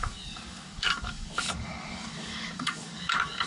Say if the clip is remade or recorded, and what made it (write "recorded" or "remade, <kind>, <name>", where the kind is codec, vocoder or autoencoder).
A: remade, codec, DAC